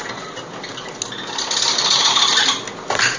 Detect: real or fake real